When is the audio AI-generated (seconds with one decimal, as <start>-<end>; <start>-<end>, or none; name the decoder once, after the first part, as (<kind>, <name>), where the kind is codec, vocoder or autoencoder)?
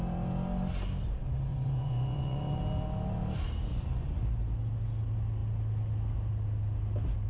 1.5-2.6 (vocoder, Vocos); 3.7-4.2